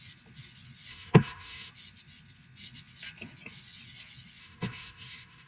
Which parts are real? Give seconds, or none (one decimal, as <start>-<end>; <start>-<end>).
0.0-0.9; 1.7-4.4